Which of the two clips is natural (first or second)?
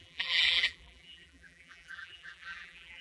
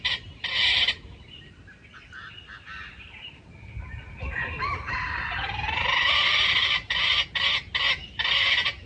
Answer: second